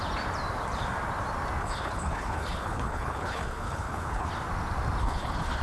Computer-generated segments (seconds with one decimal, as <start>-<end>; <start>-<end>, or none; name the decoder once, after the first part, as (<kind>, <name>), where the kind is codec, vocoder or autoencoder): 1.6-4.3 (codec, HILCodec); 5.0-5.6